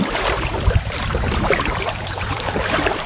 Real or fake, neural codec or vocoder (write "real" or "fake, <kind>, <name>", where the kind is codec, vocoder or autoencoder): fake, vocoder, BigVGAN v2